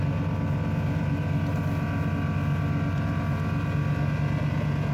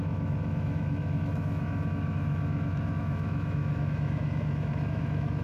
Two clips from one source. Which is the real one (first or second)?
first